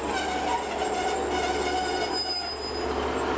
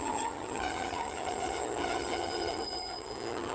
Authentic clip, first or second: first